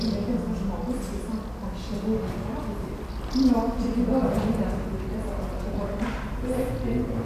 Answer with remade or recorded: recorded